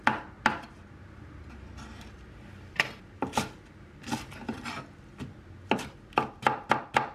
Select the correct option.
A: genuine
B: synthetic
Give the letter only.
A